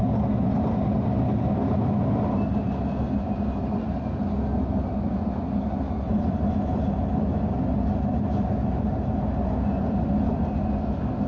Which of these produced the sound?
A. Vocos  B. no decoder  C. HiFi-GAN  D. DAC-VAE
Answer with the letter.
B